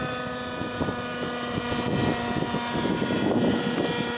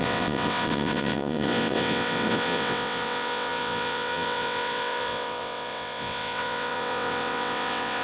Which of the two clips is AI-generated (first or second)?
second